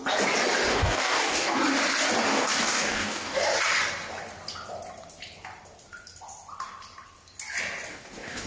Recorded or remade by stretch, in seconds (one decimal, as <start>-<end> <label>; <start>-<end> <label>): 0.0-0.7 recorded; 0.7-1.6 remade; 1.6-2.3 recorded; 2.3-3.4 remade; 3.4-7.9 recorded; 7.9-8.5 remade